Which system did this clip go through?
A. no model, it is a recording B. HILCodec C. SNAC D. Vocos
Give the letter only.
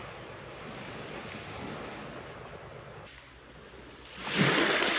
A